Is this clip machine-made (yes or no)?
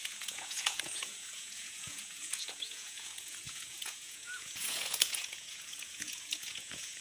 yes